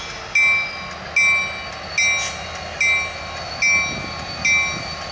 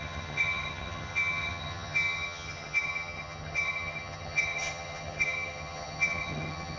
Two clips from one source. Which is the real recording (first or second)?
first